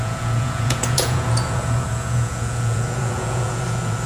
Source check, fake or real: fake